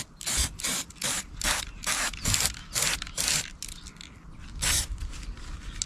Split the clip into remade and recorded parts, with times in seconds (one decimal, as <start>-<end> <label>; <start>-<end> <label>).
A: 0.0-0.7 recorded; 0.7-1.6 remade; 1.6-5.9 recorded